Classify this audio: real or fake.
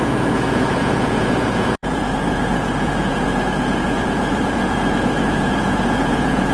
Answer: fake